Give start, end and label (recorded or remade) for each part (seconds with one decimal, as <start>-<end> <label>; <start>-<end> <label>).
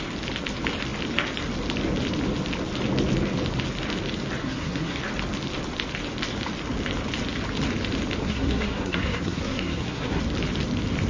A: 0.0-4.4 recorded; 4.4-5.0 remade; 5.0-8.2 recorded; 8.2-10.2 remade; 10.2-11.1 recorded